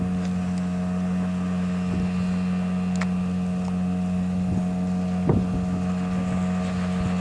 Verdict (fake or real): real